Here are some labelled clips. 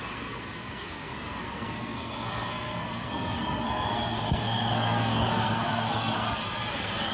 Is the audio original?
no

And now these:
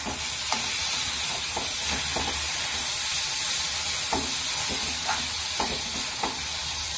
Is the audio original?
yes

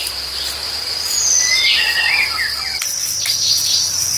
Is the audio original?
yes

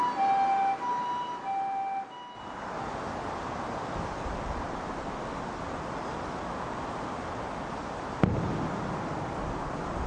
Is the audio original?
yes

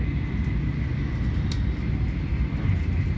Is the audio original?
yes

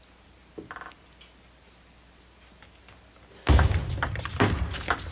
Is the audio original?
yes